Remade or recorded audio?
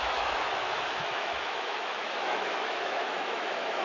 remade